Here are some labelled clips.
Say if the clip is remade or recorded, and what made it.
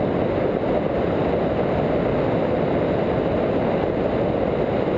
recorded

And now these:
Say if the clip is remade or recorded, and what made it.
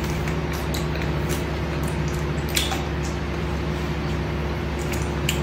recorded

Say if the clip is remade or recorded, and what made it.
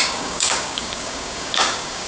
remade, codec, DAC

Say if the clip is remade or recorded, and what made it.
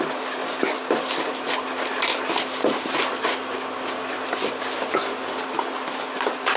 recorded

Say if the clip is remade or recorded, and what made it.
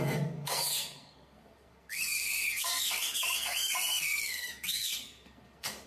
remade, codec, SNAC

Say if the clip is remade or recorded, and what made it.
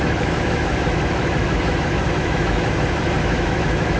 remade, autoencoder, DAC-VAE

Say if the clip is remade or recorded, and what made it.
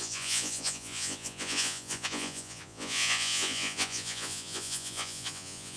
remade, vocoder, Vocos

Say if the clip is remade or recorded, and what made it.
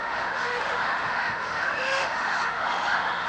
remade, autoencoder, DAC-VAE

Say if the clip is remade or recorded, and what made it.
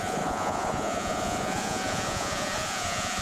remade, vocoder, Vocos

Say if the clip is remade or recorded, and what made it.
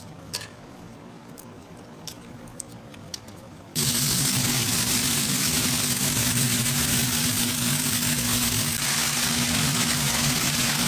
remade, codec, DAC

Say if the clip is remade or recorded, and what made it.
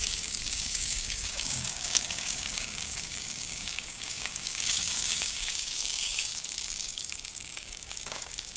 remade, codec, DAC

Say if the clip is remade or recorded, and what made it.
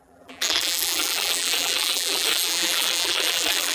remade, vocoder, BigVGAN v2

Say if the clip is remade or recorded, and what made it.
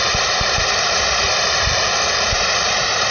remade, vocoder, BigVGAN v2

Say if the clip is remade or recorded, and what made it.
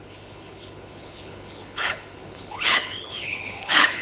remade, codec, HILCodec